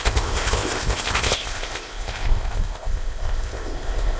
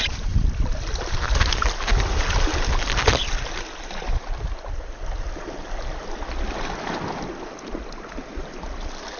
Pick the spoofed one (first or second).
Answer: first